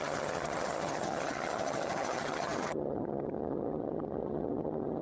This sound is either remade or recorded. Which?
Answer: remade